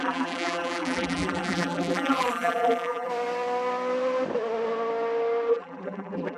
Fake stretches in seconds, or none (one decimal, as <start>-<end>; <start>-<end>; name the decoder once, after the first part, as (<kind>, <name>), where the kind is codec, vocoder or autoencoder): 0.0-3.1 (vocoder, BigVGAN v2); 5.5-6.4